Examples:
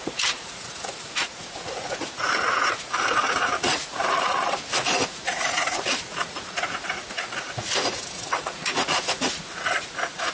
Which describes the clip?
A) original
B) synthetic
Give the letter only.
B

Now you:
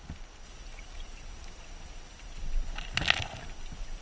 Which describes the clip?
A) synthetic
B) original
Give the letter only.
B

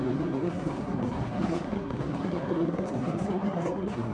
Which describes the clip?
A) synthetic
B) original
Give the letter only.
A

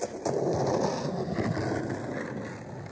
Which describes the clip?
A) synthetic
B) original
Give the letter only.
B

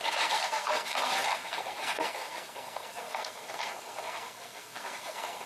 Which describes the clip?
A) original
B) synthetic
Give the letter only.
B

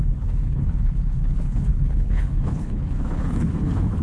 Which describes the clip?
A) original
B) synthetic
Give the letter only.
B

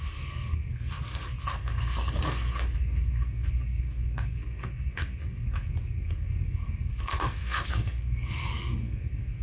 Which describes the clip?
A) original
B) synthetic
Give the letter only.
B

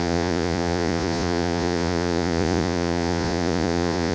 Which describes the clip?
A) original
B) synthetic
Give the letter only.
B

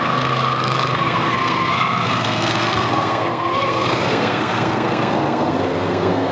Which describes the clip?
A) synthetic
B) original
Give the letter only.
A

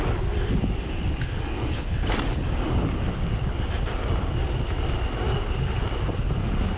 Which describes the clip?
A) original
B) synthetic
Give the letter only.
A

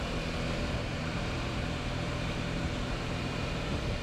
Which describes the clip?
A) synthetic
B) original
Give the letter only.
A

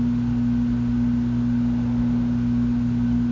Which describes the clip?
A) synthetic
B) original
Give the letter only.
B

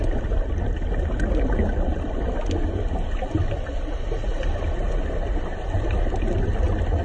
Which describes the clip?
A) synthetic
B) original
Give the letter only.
B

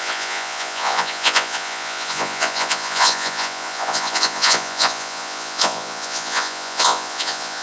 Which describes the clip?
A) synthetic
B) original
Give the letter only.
A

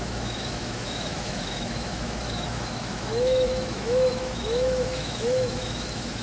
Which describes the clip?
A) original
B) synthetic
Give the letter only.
B